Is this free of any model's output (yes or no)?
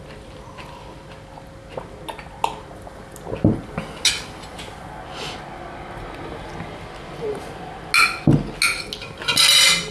yes